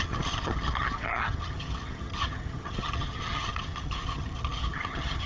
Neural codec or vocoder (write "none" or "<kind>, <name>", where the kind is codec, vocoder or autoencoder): vocoder, HiFi-GAN